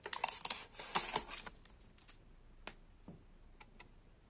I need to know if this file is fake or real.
real